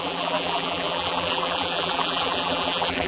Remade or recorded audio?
remade